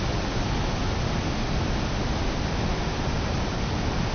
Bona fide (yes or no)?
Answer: yes